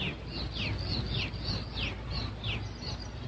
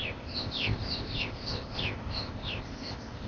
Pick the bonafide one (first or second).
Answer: first